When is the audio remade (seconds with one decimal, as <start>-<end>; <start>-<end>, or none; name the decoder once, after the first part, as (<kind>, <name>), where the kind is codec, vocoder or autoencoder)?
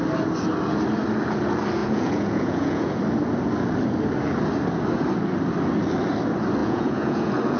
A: 1.8-3.0 (vocoder, Vocos); 6.6-7.6